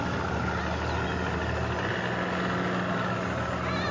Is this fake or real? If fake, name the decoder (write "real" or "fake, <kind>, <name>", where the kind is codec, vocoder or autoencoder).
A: real